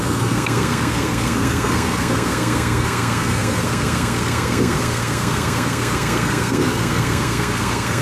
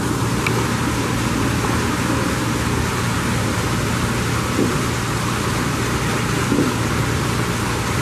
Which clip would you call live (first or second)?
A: second